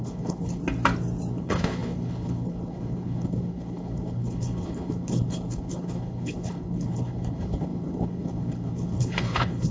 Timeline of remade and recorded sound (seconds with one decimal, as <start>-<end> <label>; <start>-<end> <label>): 0.0-0.6 remade; 0.6-1.3 recorded; 1.3-9.7 remade